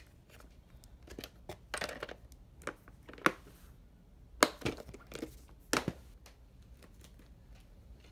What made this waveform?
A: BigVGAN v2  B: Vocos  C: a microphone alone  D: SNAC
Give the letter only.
C